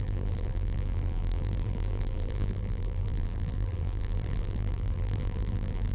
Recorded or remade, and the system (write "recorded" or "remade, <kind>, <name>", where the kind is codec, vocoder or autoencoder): remade, vocoder, BigVGAN v2